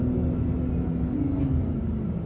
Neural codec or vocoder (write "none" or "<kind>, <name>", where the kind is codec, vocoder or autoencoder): none